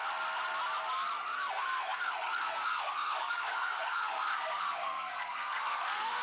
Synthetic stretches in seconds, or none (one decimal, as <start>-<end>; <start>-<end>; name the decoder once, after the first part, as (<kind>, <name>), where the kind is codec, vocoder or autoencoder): 1.5-6.2 (codec, SNAC)